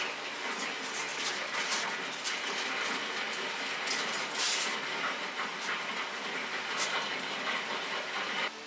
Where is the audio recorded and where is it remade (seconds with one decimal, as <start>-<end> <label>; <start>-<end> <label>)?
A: 0.0-8.7 recorded